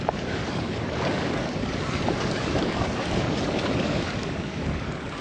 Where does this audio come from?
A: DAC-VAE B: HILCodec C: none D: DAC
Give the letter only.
D